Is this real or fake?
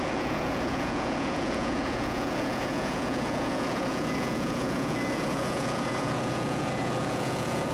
fake